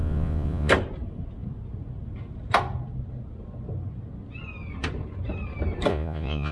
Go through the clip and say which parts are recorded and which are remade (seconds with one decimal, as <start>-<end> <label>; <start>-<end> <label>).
0.0-0.7 remade; 0.7-5.9 recorded; 5.9-6.5 remade